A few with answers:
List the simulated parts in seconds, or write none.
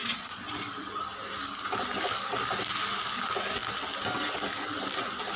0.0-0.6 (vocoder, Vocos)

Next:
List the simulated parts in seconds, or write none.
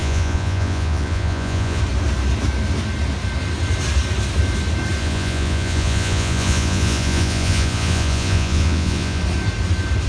0.0-1.8 (vocoder, Vocos); 5.0-9.2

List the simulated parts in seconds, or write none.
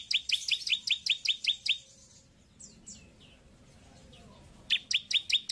none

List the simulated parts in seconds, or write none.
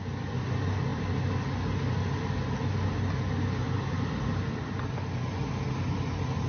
none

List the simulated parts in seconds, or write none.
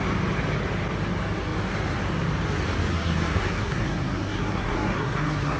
2.9-5.6 (codec, SNAC)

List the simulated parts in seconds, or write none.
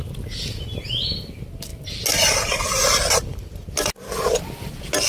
none